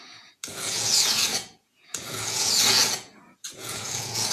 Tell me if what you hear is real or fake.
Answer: fake